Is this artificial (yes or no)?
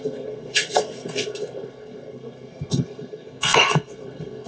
yes